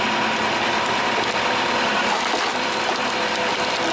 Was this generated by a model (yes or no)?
yes